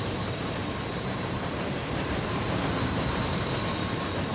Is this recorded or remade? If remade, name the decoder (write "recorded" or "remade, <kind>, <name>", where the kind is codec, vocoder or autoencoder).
remade, vocoder, BigVGAN v2